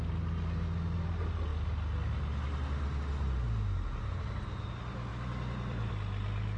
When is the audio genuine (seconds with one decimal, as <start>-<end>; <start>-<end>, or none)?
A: 0.0-5.1; 5.9-6.6